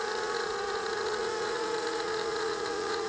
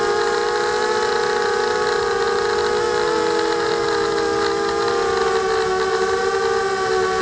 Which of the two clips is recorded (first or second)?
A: second